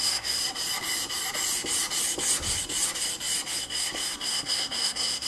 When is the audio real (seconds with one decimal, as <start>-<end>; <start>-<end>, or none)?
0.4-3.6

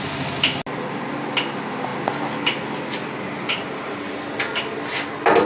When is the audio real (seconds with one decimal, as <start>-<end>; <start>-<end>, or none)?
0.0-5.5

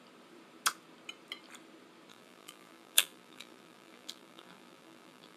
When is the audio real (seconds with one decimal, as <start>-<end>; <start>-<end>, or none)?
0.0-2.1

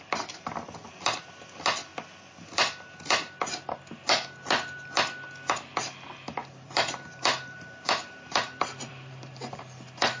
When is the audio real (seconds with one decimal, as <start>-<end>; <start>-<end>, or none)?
0.0-6.4; 9.6-10.2

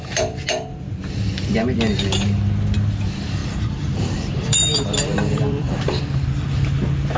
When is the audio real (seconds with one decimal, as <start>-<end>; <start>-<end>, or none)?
0.0-3.4; 6.0-7.2

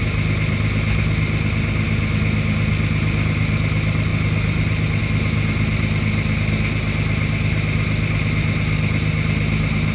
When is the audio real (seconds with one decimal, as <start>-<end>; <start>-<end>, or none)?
0.0-9.9